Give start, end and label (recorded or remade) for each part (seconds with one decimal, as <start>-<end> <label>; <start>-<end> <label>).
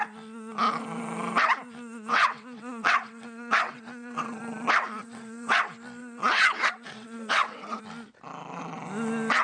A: 0.0-2.1 recorded; 2.1-4.4 remade; 4.4-5.0 recorded; 5.0-5.6 remade; 5.6-6.0 recorded; 6.0-7.8 remade; 7.8-9.4 recorded